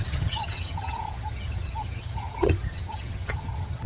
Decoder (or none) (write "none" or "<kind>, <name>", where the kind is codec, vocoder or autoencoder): vocoder, HiFi-GAN